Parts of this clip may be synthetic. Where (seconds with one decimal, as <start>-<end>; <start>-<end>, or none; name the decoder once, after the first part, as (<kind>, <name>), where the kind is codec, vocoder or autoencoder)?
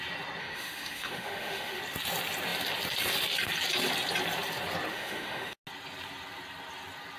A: 0.4-1.8 (autoencoder, DAC-VAE); 4.9-5.6